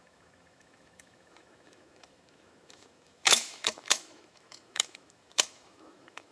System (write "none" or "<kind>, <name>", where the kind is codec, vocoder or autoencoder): autoencoder, DAC-VAE